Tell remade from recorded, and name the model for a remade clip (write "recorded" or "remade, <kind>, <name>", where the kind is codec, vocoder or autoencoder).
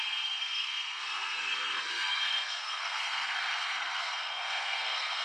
remade, codec, SNAC